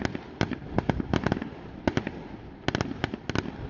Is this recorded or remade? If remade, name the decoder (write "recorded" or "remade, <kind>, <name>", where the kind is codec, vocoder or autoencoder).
recorded